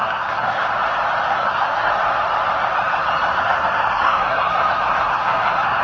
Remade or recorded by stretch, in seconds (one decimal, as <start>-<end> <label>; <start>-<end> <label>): 0.0-0.7 remade; 0.7-1.3 recorded; 1.3-1.9 remade; 1.9-3.4 recorded; 3.4-5.8 remade